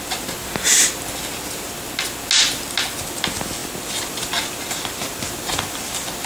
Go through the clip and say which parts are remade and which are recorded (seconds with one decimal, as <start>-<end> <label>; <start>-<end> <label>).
0.0-6.3 recorded